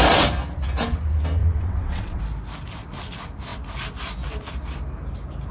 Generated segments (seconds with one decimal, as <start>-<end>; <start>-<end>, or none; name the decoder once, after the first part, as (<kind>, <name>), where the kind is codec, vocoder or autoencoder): 1.4-2.2 (vocoder, WaveNeXt)